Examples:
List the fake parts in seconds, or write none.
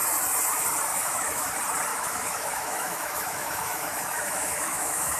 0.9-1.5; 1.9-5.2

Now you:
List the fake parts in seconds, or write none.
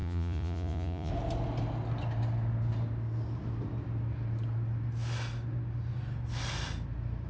0.0-1.1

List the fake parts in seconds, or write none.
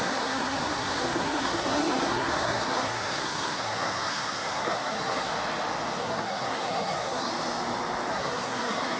0.0-5.3; 6.0-7.3; 8.1-9.0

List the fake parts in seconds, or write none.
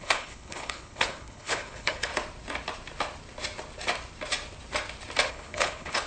0.0-2.1; 5.3-6.1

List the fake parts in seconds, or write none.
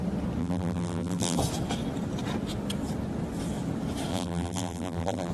0.4-1.4; 4.1-5.3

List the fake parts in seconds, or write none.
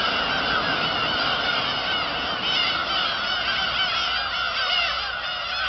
none